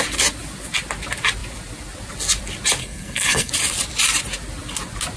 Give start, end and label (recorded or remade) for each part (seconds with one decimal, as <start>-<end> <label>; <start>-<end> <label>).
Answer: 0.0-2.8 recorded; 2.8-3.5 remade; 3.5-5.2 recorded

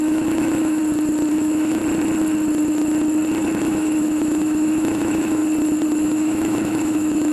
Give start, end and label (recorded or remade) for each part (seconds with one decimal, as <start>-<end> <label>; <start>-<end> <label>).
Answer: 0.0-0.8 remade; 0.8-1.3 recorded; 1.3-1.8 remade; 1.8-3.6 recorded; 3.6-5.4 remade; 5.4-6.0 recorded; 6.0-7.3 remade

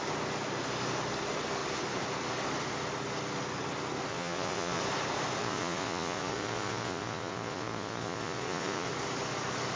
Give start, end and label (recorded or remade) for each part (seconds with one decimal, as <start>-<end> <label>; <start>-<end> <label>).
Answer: 0.0-4.1 recorded; 4.1-4.8 remade; 4.8-5.4 recorded; 5.4-8.9 remade; 8.9-9.8 recorded